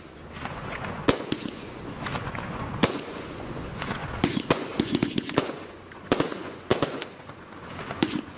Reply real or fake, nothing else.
fake